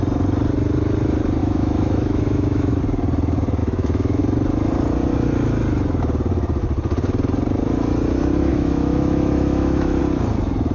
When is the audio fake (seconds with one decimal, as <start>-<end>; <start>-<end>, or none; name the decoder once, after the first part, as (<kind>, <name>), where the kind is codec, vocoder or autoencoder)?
1.4-2.8 (autoencoder, DAC-VAE); 3.6-4.2; 8.5-10.0